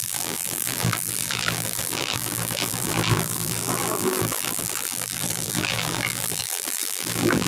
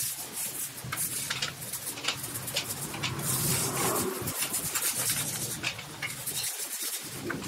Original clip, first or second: second